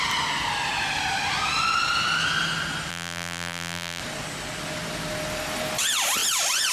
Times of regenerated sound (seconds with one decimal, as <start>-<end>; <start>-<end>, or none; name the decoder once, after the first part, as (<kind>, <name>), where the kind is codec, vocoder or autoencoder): 2.9-4.0 (vocoder, BigVGAN v2)

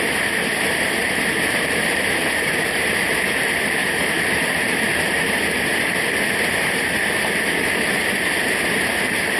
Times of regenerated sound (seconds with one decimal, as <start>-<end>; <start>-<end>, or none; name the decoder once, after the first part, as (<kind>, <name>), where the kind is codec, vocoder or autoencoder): 0.0-3.8 (vocoder, BigVGAN v2); 5.2-9.4

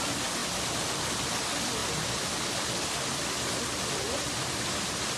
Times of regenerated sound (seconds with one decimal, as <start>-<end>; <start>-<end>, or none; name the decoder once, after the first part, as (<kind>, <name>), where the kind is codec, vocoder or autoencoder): none

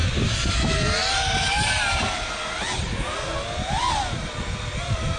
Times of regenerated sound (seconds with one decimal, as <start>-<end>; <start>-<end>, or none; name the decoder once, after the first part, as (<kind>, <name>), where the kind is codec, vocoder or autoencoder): 0.0-0.5 (vocoder, BigVGAN v2)

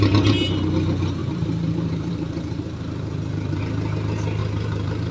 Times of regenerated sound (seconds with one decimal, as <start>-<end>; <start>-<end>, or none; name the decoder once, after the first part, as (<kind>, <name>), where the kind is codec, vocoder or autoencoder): 1.2-3.6 (vocoder, BigVGAN v2); 4.4-5.1

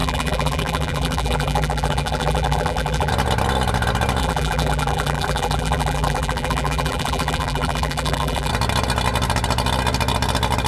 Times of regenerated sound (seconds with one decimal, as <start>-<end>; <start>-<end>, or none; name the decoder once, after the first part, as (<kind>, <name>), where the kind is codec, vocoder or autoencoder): 0.0-3.1 (vocoder, BigVGAN v2); 4.2-8.5

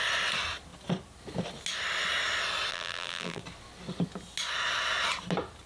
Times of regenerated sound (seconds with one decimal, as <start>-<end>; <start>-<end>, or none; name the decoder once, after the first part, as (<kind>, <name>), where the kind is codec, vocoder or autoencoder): 2.7-3.4 (vocoder, BigVGAN v2)

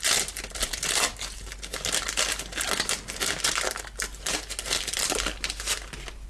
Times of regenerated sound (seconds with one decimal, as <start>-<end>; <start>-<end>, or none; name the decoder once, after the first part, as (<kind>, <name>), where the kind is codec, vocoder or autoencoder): none